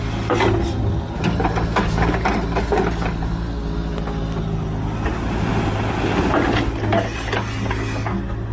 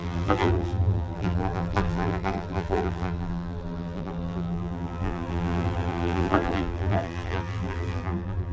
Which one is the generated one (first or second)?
second